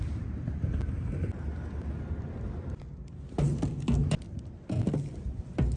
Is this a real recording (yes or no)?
yes